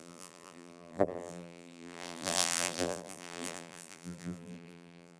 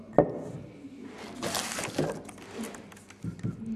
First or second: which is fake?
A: first